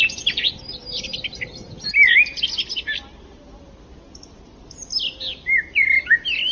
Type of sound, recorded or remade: recorded